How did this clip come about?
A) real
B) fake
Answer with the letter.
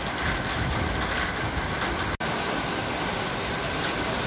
A